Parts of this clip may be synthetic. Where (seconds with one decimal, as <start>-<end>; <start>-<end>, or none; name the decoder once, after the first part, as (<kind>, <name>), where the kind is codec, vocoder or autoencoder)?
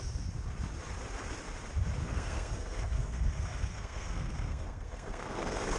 2.0-5.8 (codec, SNAC)